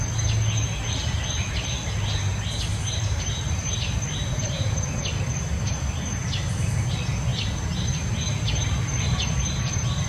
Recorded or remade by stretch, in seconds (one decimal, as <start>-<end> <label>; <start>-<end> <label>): 0.0-2.7 recorded; 2.7-4.9 remade; 4.9-10.1 recorded